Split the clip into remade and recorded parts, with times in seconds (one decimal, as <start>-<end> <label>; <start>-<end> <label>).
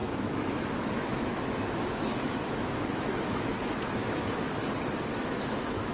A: 0.0-3.5 remade; 3.5-4.0 recorded; 4.0-4.6 remade; 4.6-5.1 recorded; 5.1-5.9 remade